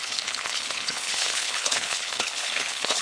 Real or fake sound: fake